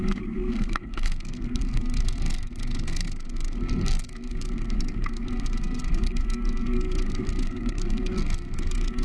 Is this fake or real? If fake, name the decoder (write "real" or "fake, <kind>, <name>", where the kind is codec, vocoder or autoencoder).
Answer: fake, codec, SNAC